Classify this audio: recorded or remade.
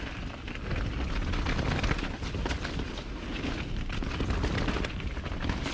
recorded